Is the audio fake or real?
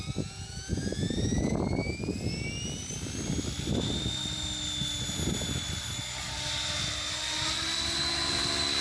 real